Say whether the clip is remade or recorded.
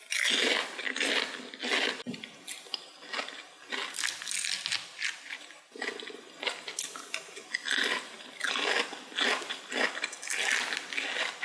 recorded